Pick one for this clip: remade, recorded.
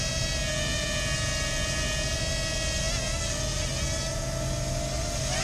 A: recorded